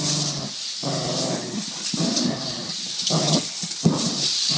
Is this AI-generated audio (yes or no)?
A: no